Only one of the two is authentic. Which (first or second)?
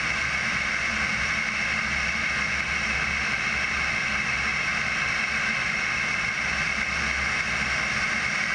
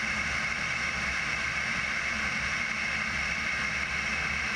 first